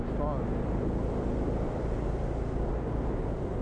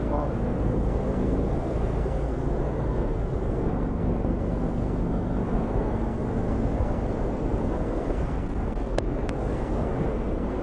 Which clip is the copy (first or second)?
second